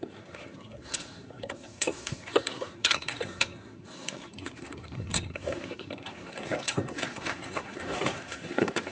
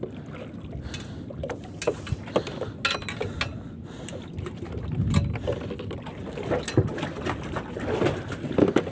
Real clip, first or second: second